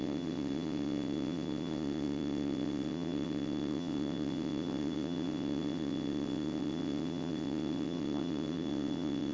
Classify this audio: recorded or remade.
remade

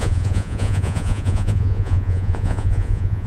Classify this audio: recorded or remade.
remade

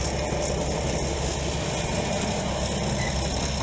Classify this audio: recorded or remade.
recorded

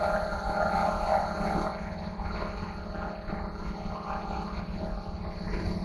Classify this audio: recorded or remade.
recorded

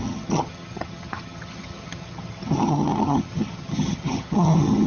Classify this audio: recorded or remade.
remade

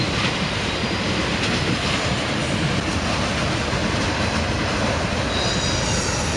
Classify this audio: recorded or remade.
recorded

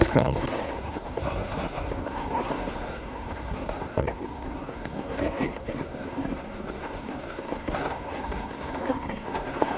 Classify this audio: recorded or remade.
remade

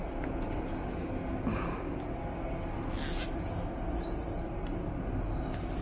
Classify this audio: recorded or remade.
recorded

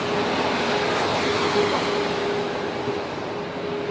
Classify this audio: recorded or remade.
recorded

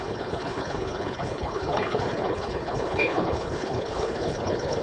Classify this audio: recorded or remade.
remade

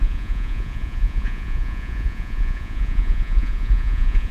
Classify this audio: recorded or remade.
remade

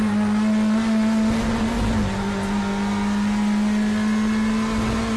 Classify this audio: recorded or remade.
recorded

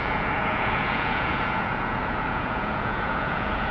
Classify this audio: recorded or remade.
remade